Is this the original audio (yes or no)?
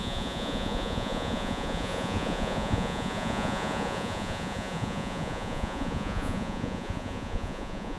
no